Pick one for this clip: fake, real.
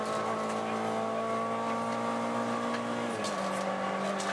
real